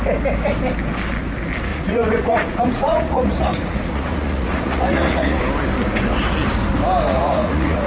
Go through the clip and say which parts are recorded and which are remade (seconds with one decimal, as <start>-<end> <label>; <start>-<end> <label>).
0.0-1.7 recorded; 1.7-5.4 remade; 5.4-7.1 recorded; 7.1-7.9 remade